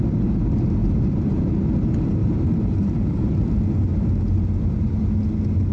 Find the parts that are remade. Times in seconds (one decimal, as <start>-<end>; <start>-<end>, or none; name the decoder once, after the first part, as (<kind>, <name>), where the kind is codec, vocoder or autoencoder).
0.8-1.5 (vocoder, BigVGAN v2); 2.2-3.4

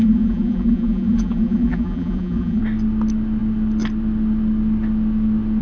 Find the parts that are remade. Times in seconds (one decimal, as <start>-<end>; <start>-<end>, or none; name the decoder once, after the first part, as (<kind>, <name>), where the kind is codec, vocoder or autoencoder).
0.0-2.6 (vocoder, BigVGAN v2)

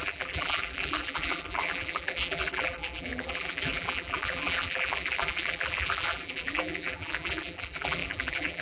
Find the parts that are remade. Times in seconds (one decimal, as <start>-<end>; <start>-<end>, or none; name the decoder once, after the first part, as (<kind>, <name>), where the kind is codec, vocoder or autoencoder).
0.0-8.6 (vocoder, BigVGAN v2)

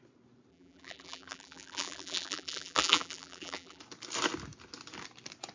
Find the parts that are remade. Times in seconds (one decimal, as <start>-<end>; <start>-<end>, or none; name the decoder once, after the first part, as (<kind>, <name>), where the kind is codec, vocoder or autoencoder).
0.5-3.8 (vocoder, BigVGAN v2)

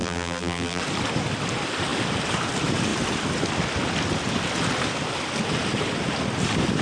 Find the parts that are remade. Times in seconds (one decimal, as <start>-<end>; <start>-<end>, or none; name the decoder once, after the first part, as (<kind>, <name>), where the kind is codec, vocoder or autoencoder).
0.0-0.8 (vocoder, BigVGAN v2)

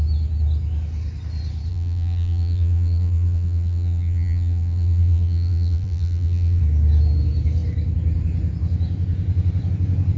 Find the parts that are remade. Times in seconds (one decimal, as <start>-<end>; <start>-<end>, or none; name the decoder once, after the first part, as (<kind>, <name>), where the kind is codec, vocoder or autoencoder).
1.7-6.6 (vocoder, BigVGAN v2)

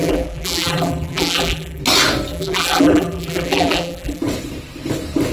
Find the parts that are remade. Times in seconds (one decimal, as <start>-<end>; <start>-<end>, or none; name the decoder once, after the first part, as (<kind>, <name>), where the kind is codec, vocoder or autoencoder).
0.0-1.8 (vocoder, BigVGAN v2); 2.3-4.2